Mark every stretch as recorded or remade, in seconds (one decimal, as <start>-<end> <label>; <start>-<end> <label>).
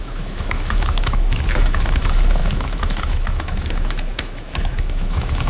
0.0-5.5 remade